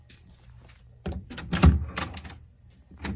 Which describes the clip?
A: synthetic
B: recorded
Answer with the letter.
B